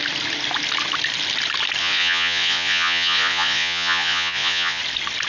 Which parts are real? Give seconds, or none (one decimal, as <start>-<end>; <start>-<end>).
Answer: 0.0-1.8; 4.8-5.3